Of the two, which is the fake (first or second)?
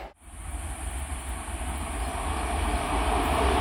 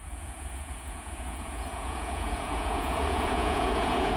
second